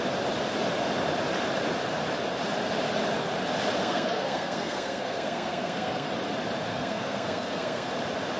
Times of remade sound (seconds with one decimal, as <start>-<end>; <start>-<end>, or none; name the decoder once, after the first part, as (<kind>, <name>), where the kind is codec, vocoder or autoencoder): 3.8-6.1 (codec, SNAC); 6.7-7.9